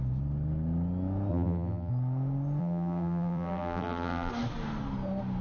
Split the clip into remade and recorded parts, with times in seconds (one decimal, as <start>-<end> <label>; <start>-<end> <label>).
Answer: 0.0-1.3 recorded; 1.3-1.9 remade; 1.9-2.6 recorded; 2.6-4.3 remade; 4.3-5.4 recorded